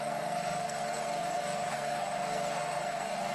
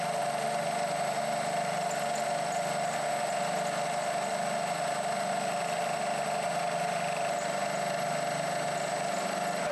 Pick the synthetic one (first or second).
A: first